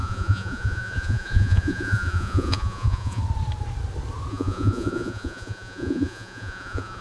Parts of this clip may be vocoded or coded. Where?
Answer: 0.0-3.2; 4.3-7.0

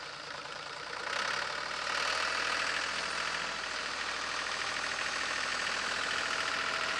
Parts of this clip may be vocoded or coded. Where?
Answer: 0.0-1.0; 3.8-5.5; 6.5-7.0

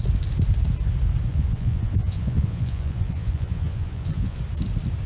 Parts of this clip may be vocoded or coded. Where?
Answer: 1.3-4.4

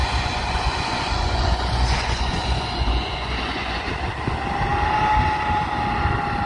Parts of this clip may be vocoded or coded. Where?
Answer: 0.0-3.9

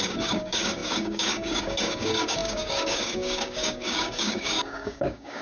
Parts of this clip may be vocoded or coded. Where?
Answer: 0.0-5.4

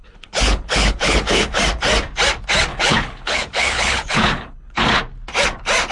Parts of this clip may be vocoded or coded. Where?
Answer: 0.0-1.6; 2.7-5.0

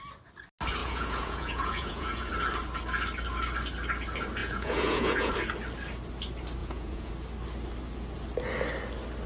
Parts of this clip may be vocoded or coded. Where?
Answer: 0.8-2.3; 4.4-5.3; 6.6-7.1